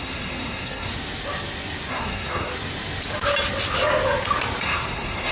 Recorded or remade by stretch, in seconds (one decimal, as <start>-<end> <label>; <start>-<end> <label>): 0.0-0.9 remade; 0.9-1.9 recorded; 1.9-2.5 remade; 2.5-4.6 recorded; 4.6-5.3 remade